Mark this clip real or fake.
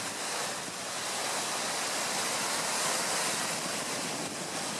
real